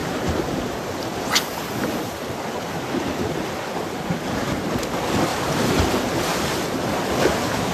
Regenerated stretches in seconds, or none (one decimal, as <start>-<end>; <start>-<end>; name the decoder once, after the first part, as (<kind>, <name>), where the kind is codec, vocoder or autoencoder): 0.0-3.5 (vocoder, BigVGAN v2); 5.3-6.1